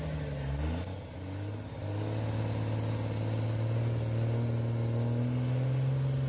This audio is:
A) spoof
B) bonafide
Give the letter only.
B